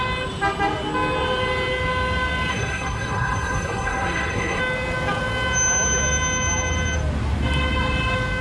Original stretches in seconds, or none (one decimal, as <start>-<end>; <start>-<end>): 0.0-2.5; 4.6-8.4